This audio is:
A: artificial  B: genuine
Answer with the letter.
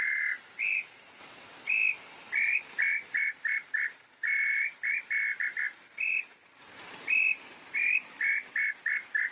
B